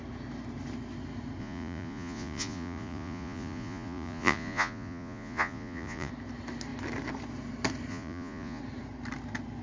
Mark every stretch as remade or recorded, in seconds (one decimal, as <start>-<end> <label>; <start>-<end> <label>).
0.0-1.4 recorded; 1.4-6.1 remade; 6.1-7.9 recorded; 7.9-8.6 remade; 8.6-9.6 recorded